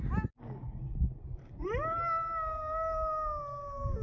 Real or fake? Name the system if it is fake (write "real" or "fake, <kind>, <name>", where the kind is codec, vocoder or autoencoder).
real